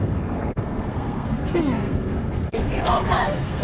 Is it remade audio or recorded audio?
remade